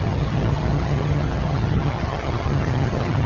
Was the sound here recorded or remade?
remade